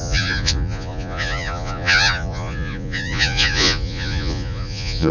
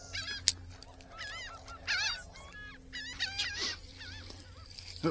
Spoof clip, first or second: first